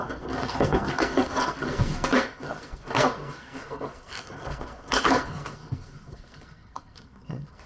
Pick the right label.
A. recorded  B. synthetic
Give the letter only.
B